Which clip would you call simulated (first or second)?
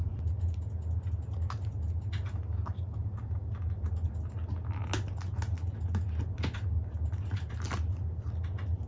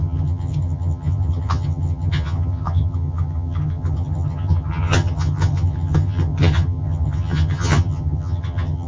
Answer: second